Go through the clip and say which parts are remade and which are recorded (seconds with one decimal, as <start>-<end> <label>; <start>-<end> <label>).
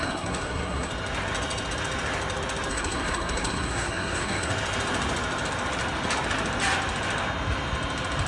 0.0-0.9 remade; 0.9-2.7 recorded; 2.7-4.5 remade; 4.5-8.3 recorded